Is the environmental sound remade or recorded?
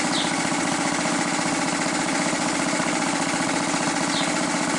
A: recorded